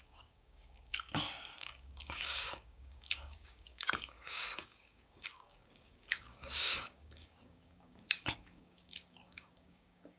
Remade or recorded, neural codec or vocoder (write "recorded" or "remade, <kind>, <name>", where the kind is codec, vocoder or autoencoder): remade, codec, DAC